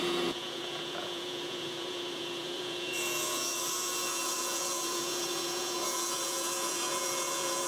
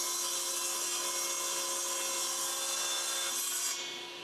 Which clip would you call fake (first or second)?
first